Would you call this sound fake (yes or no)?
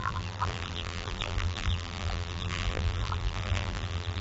yes